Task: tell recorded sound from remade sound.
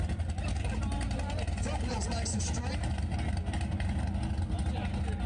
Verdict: recorded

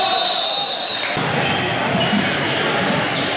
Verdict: recorded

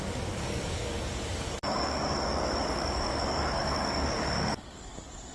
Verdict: remade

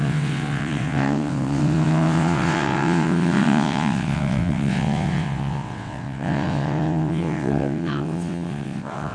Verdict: remade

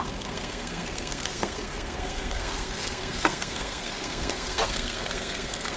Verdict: remade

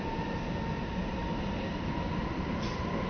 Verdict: recorded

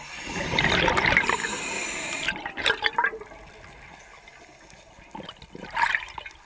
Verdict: recorded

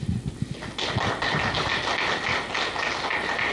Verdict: recorded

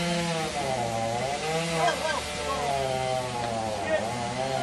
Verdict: recorded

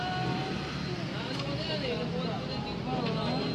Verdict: recorded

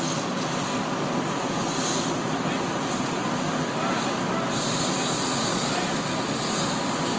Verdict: recorded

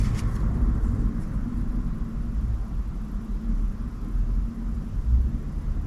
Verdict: recorded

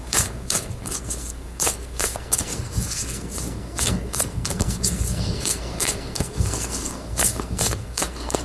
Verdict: remade